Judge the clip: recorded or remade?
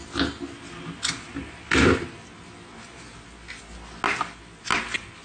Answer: recorded